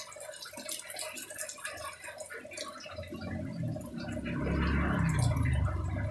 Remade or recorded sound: recorded